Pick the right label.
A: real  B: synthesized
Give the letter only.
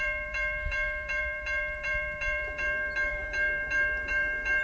B